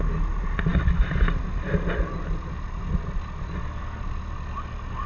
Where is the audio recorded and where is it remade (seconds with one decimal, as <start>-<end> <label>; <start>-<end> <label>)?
0.0-5.1 recorded